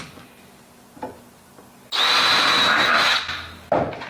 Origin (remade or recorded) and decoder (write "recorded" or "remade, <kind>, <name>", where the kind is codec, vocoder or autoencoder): recorded